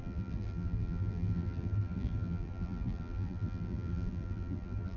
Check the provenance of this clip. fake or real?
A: fake